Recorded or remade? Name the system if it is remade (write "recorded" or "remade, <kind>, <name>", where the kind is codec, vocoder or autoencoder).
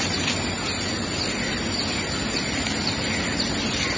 recorded